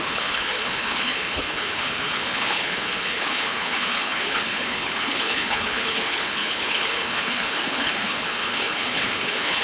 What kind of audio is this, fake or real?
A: fake